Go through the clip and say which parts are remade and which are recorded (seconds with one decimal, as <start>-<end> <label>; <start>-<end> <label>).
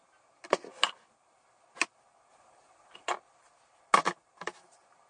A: 0.0-5.1 recorded